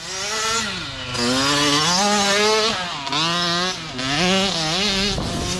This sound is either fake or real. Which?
real